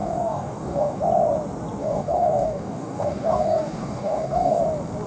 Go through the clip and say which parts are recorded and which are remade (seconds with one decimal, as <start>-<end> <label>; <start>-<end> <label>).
0.0-1.0 remade; 1.0-1.8 recorded; 1.8-4.6 remade; 4.6-5.1 recorded